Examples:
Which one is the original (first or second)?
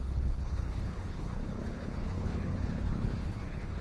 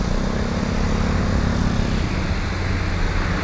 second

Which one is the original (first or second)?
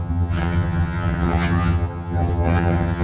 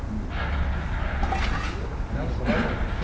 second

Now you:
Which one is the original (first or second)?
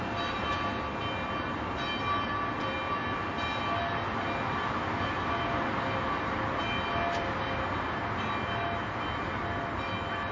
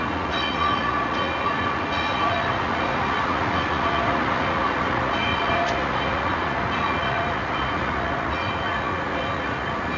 first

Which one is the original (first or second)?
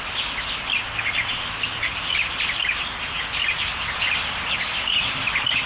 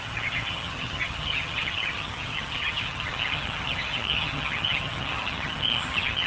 first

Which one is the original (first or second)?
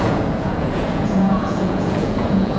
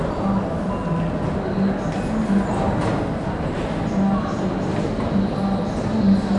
second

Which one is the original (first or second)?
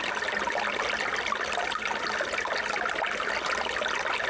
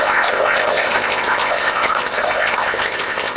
first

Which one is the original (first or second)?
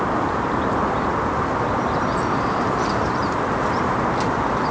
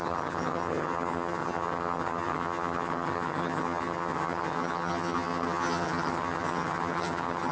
first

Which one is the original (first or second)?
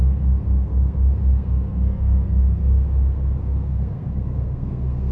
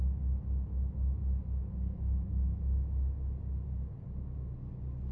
second